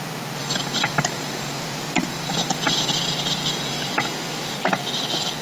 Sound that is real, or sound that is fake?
real